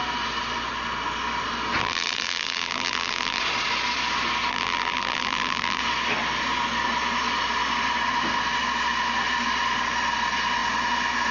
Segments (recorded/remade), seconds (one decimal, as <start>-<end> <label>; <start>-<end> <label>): 0.0-1.8 recorded; 1.8-3.4 remade; 3.4-4.5 recorded; 4.5-5.8 remade; 5.8-11.3 recorded